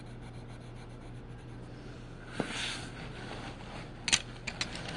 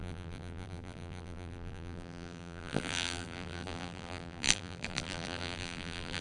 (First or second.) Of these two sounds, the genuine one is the first